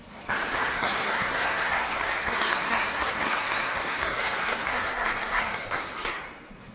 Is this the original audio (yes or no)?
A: no